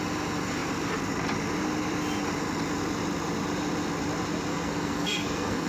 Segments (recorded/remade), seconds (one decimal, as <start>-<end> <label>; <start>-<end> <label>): 0.0-4.5 recorded; 4.5-5.7 remade